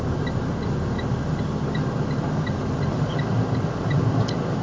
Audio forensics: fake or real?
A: real